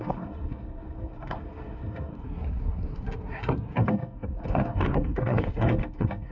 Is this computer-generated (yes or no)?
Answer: yes